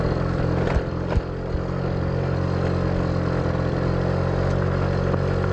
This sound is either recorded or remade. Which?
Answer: recorded